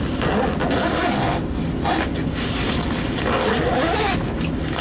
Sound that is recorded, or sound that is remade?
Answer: recorded